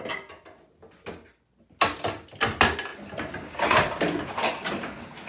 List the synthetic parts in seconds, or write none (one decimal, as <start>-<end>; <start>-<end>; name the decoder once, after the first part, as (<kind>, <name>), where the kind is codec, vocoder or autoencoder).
none